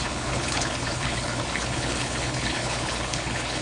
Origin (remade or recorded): remade